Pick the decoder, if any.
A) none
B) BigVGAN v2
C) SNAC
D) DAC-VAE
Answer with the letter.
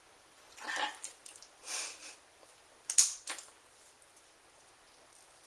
A